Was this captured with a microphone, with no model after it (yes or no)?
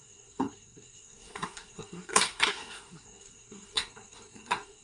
no